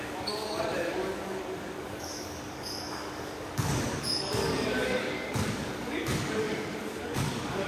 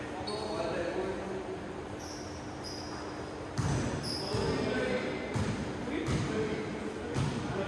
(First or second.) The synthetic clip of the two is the first